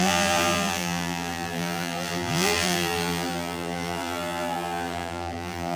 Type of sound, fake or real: fake